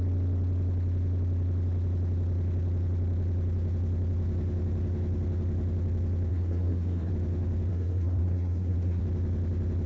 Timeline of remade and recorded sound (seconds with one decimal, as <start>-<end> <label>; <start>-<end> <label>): 0.0-6.3 recorded; 6.3-7.1 remade; 7.1-7.7 recorded; 7.7-9.0 remade; 9.0-9.9 recorded